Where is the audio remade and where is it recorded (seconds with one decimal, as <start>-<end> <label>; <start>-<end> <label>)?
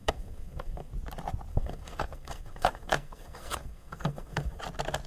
0.0-0.9 remade; 0.9-1.5 recorded; 1.5-4.6 remade; 4.6-5.1 recorded